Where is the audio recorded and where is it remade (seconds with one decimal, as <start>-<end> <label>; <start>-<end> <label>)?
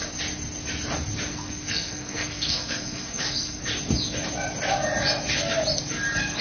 0.0-1.3 recorded; 1.3-3.6 remade; 3.6-6.4 recorded